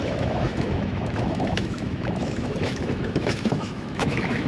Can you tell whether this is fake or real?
fake